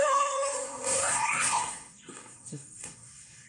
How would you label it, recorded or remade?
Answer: remade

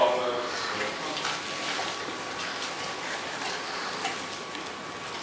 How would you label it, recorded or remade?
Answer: recorded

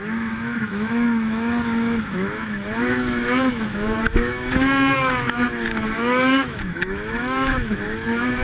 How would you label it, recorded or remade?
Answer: remade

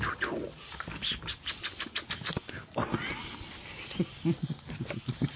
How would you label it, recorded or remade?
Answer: recorded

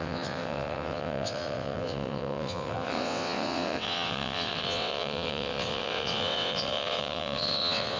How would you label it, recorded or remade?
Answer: remade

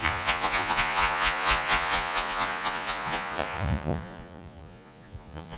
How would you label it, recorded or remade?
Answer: remade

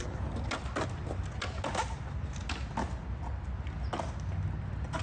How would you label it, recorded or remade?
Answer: recorded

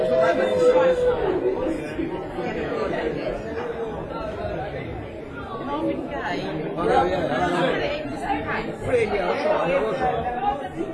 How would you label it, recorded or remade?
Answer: recorded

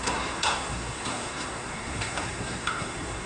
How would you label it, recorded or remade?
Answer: remade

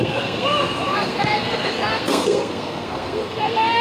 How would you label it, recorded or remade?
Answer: remade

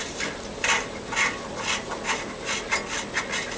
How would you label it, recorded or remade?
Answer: recorded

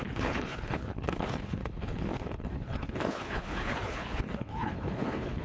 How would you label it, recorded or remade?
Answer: remade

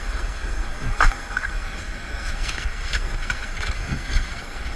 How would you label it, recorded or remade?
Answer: remade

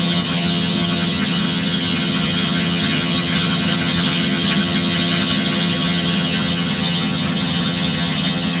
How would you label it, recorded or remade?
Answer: remade